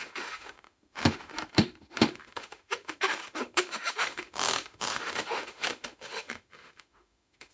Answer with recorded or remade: remade